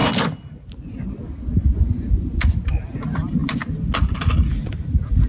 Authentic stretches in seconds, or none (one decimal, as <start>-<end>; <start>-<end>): 0.0-5.3